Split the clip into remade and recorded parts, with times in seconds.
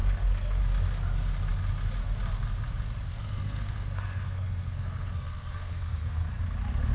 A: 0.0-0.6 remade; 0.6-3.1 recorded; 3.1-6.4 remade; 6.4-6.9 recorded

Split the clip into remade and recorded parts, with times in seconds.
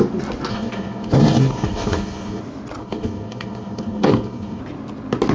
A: 0.0-0.5 recorded; 0.5-2.4 remade; 2.4-2.8 recorded; 2.8-4.6 remade; 4.6-5.3 recorded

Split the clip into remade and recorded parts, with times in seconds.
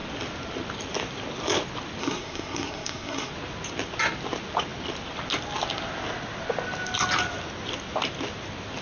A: 0.0-2.0 recorded; 2.0-3.3 remade; 3.3-8.8 recorded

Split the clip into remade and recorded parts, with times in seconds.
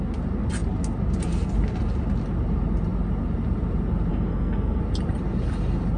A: 0.0-4.1 recorded; 4.1-4.8 remade; 4.8-6.0 recorded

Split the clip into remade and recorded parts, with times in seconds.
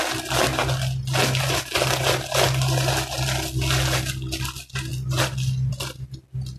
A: 0.0-6.6 recorded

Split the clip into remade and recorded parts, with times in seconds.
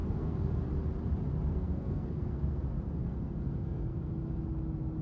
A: 0.0-0.7 remade; 0.7-1.5 recorded; 1.5-2.6 remade; 2.6-3.0 recorded; 3.0-4.4 remade; 4.4-5.0 recorded